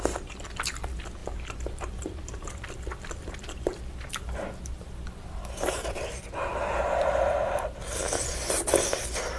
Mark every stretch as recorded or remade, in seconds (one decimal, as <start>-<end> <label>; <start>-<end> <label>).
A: 0.0-1.2 recorded; 1.2-5.7 remade; 5.7-6.5 recorded; 6.5-8.3 remade; 8.3-9.4 recorded